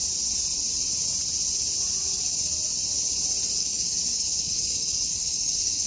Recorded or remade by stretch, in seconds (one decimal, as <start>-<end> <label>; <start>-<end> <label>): 0.0-3.6 recorded; 3.6-5.9 remade